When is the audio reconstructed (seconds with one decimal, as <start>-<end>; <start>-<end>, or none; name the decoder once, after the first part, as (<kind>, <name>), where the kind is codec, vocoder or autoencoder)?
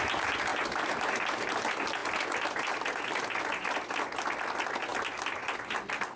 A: 0.5-1.5 (vocoder, BigVGAN v2); 2.0-4.4; 4.9-6.2